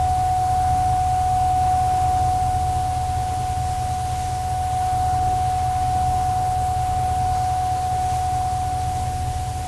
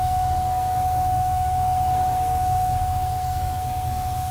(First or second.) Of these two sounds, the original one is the first